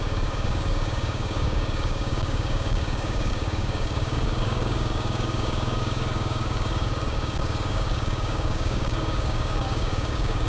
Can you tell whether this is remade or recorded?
remade